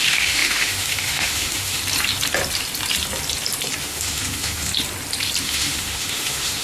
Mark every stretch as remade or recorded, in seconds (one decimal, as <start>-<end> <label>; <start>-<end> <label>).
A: 0.0-1.8 remade; 1.8-3.8 recorded; 3.8-4.7 remade; 4.7-5.4 recorded; 5.4-6.6 remade